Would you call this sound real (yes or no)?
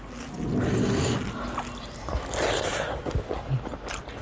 yes